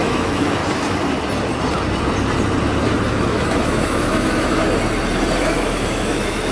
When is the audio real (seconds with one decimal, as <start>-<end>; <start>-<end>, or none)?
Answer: 0.6-3.1; 4.6-5.4